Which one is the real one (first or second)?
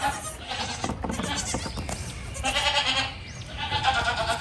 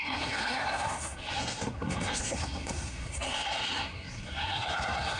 first